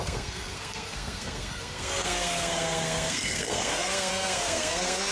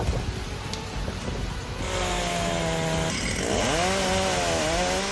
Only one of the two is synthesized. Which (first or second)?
first